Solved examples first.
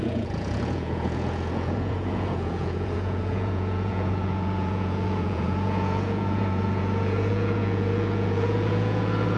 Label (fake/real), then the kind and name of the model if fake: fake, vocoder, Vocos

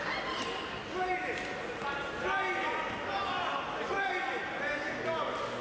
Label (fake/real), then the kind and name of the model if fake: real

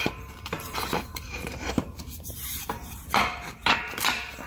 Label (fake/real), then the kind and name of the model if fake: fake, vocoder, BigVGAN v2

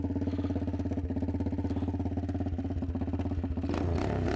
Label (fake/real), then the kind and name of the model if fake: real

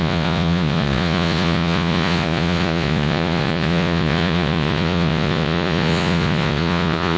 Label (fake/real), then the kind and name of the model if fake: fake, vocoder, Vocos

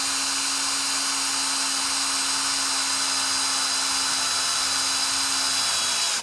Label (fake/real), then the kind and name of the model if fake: real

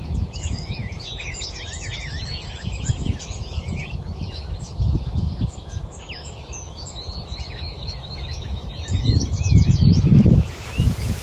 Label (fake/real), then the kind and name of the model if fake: fake, autoencoder, DAC-VAE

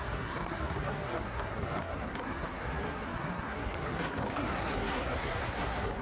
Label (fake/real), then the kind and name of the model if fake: fake, codec, SNAC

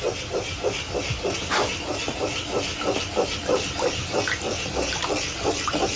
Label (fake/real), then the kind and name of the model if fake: real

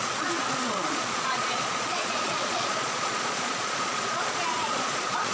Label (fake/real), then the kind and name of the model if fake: fake, vocoder, Vocos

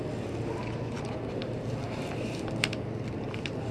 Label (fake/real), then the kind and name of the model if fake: real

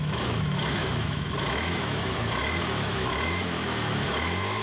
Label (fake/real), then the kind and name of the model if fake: fake, autoencoder, DAC-VAE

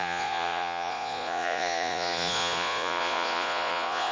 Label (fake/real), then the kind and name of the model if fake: fake, vocoder, Vocos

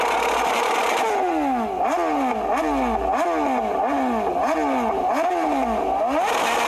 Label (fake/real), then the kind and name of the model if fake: real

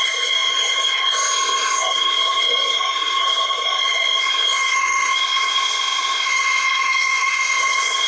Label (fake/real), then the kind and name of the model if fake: fake, codec, SNAC